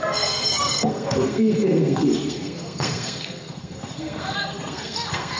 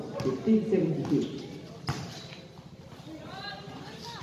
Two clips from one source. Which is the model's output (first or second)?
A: first